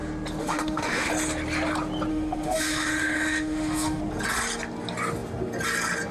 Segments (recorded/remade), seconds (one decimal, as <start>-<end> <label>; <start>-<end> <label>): 0.0-0.4 recorded; 0.4-1.1 remade; 1.1-2.1 recorded; 2.1-4.0 remade; 4.0-6.1 recorded